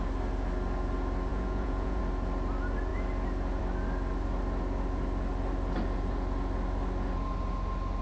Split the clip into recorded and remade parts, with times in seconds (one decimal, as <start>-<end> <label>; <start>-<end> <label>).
0.0-1.3 recorded; 1.3-2.0 remade; 2.0-8.0 recorded